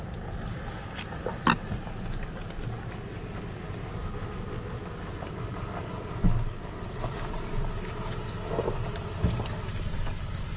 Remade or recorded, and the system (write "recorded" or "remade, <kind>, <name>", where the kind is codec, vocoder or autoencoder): recorded